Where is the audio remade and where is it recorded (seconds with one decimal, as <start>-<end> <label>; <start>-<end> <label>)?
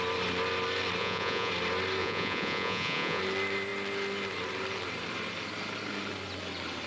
0.0-1.0 recorded; 1.0-1.5 remade; 1.5-2.0 recorded; 2.0-3.2 remade; 3.2-6.9 recorded